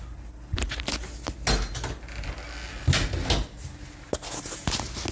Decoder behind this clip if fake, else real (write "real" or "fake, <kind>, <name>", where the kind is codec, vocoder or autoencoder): real